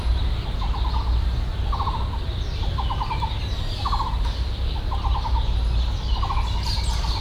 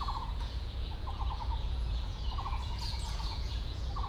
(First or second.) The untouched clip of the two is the first